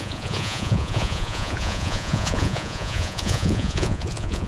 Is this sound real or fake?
fake